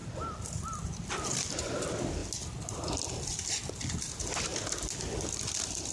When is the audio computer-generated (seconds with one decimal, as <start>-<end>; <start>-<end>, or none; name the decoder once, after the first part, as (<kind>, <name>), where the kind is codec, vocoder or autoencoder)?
0.0-1.5 (vocoder, BigVGAN v2)